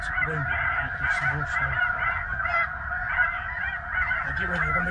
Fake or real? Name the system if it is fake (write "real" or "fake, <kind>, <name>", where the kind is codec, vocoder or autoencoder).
real